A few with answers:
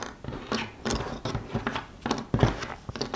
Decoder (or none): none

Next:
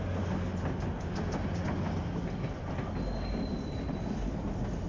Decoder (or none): none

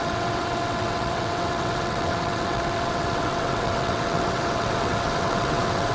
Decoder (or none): vocoder, WaveNeXt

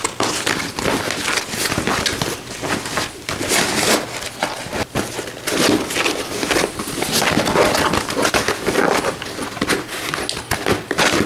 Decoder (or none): none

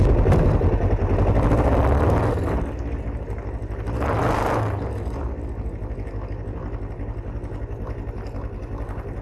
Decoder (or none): none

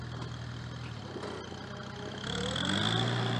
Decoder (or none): none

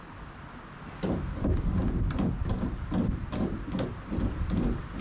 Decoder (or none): none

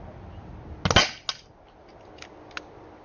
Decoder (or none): none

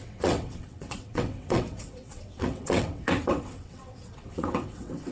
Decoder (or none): vocoder, WaveNeXt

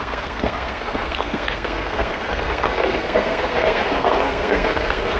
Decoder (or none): codec, SNAC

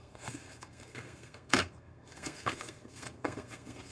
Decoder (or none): codec, SNAC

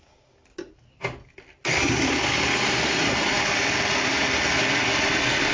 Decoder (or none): none